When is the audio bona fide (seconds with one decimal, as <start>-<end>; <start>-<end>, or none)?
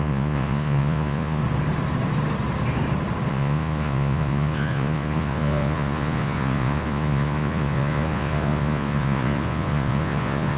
1.4-3.3